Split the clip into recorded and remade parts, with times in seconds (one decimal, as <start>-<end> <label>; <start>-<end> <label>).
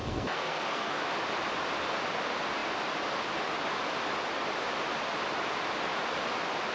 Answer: 0.0-1.0 remade; 1.0-6.7 recorded